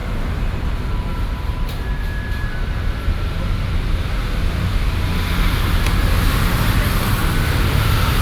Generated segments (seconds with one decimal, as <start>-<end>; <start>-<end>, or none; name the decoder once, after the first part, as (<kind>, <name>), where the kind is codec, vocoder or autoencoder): 0.0-0.6 (vocoder, BigVGAN v2); 1.1-5.3